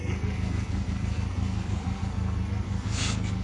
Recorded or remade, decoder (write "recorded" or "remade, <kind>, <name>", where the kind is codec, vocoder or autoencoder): remade, codec, SNAC